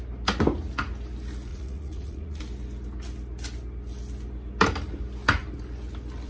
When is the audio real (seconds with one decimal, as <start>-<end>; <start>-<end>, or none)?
0.0-1.5; 2.4-6.3

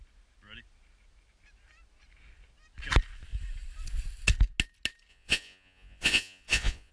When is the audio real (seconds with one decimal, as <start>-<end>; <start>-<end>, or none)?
0.0-5.1

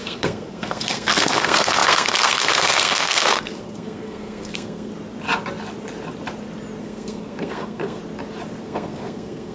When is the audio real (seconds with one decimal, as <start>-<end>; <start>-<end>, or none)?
4.9-6.8; 8.0-8.6

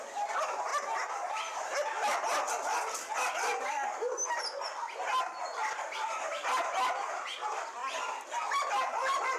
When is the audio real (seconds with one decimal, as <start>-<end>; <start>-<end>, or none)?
0.0-9.4

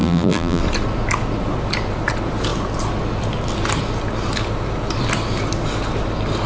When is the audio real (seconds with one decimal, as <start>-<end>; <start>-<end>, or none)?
0.6-6.5

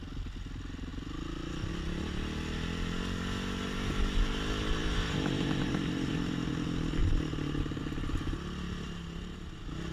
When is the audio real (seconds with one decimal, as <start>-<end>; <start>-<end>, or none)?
0.0-4.8; 6.5-9.9

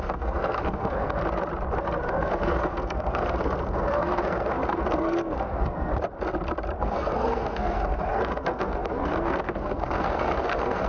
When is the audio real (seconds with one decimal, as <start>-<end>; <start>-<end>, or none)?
1.2-2.1; 5.9-6.8

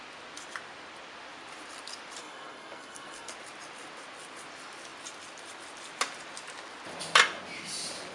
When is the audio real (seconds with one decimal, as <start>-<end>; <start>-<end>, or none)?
0.0-2.2; 3.3-8.1